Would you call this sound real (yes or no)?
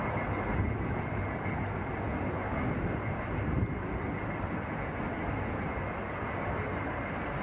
yes